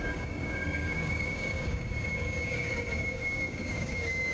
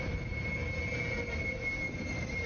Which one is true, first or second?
second